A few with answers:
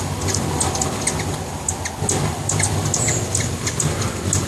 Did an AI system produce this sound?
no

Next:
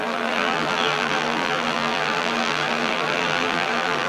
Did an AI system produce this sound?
yes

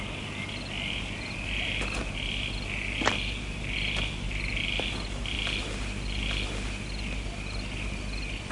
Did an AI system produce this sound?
no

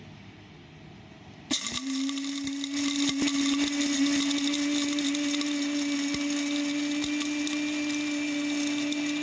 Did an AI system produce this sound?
no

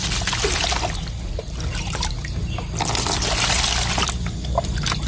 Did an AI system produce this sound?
no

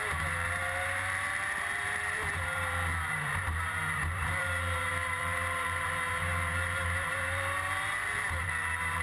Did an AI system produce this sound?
yes